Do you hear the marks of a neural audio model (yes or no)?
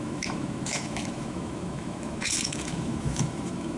yes